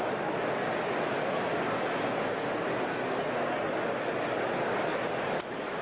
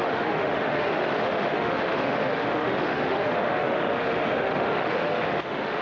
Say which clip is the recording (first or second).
first